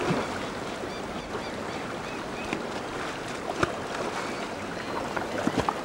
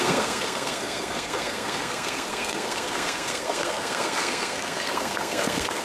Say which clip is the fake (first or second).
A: second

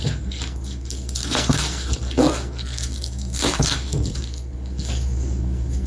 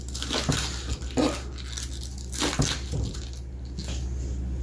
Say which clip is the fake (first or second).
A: first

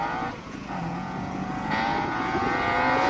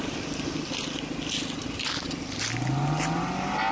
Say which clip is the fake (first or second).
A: first